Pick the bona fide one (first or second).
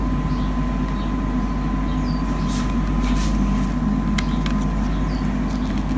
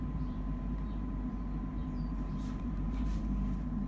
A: first